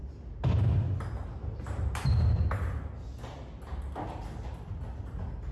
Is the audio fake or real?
real